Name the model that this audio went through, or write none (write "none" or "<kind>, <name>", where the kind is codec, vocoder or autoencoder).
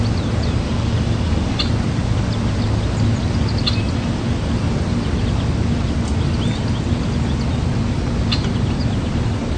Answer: none